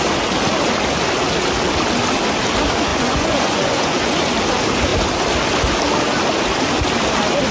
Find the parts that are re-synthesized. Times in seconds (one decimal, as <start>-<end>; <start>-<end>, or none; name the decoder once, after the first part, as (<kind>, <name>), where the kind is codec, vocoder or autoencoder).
2.9-4.3 (vocoder, Vocos)